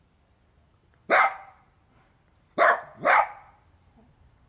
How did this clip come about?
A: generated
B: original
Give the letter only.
B